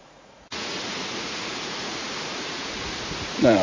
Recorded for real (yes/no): no